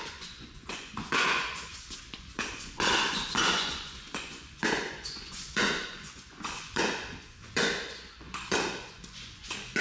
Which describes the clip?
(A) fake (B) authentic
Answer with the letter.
A